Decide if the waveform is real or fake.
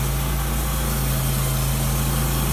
real